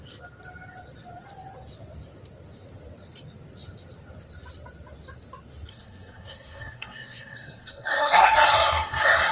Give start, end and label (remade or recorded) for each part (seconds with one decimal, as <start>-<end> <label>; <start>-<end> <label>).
0.0-5.7 recorded; 5.7-9.3 remade